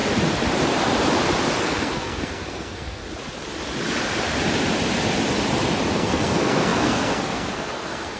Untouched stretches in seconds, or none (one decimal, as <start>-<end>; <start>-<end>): 0.0-1.6; 3.0-5.9